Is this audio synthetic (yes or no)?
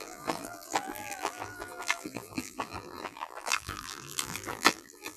yes